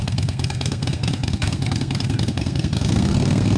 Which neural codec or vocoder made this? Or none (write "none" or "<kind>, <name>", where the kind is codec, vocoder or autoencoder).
codec, SNAC